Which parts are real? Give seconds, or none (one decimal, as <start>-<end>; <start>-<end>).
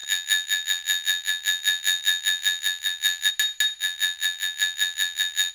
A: 3.3-3.8